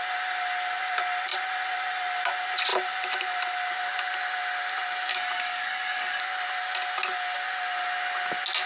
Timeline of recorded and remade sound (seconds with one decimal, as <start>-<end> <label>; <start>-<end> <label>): 0.0-5.1 recorded; 5.1-6.2 remade; 6.2-8.7 recorded